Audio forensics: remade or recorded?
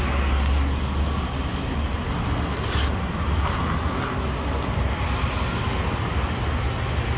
recorded